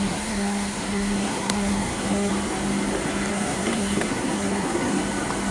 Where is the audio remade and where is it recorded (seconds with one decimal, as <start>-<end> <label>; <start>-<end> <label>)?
0.0-2.3 remade; 2.3-3.3 recorded; 3.3-5.0 remade; 5.0-5.5 recorded